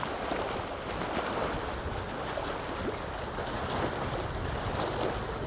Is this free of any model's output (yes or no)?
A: yes